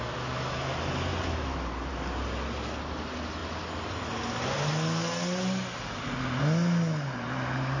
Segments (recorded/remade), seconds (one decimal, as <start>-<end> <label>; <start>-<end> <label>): 0.0-7.8 recorded